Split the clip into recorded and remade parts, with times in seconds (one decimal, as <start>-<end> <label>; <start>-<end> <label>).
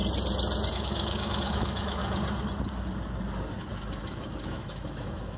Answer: 0.0-0.7 recorded; 0.7-2.0 remade; 2.0-4.0 recorded; 4.0-5.4 remade